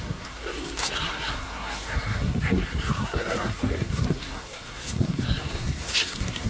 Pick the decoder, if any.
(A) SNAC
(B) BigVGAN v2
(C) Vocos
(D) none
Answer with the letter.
A